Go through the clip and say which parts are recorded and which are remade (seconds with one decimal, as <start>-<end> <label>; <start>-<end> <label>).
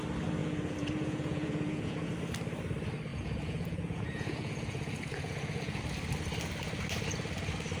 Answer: 0.0-0.4 recorded; 0.4-2.1 remade; 2.1-3.1 recorded; 3.1-5.8 remade; 5.8-7.8 recorded